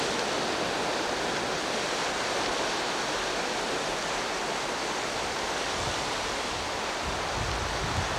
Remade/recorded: recorded